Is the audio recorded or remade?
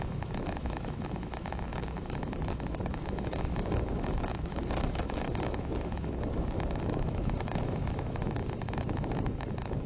remade